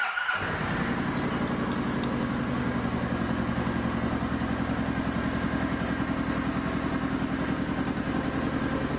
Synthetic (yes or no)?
no